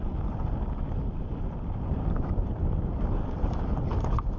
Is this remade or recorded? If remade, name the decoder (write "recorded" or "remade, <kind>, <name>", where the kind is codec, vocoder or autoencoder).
recorded